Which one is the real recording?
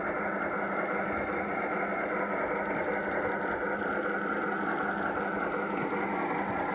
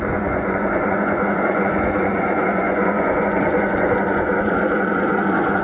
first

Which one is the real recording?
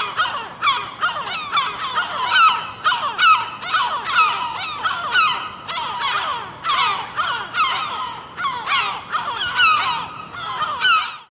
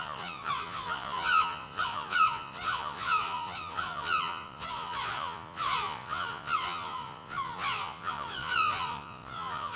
first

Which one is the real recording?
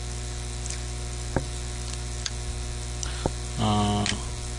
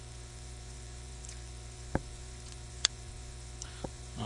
first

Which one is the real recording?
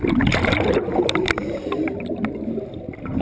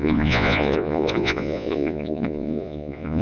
first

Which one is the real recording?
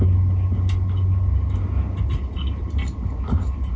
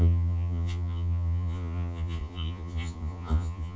first